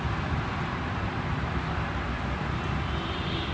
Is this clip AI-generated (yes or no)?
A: no